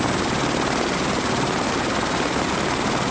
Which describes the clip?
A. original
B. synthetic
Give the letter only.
A